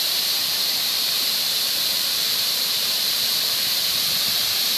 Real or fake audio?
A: fake